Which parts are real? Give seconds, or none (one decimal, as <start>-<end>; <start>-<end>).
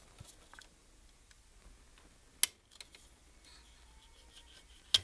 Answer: 0.0-5.0